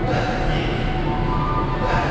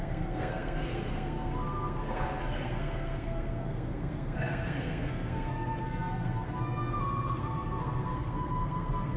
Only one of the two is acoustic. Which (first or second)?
first